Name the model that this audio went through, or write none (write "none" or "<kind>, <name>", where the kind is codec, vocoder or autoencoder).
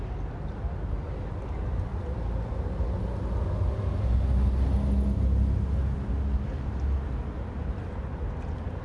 none